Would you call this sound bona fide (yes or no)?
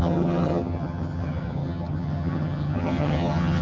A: no